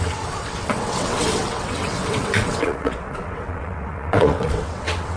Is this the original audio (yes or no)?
no